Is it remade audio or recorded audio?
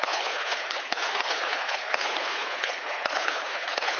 remade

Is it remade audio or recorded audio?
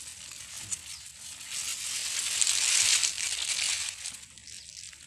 recorded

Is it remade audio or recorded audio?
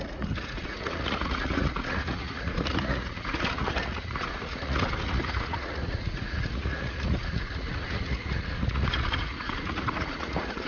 remade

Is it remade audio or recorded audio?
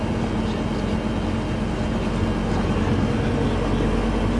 recorded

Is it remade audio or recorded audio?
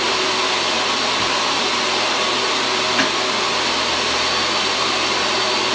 recorded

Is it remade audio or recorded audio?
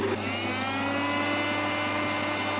recorded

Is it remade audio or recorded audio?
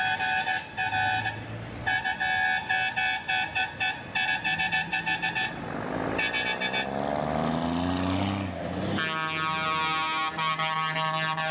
recorded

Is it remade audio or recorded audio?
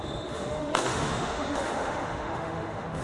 remade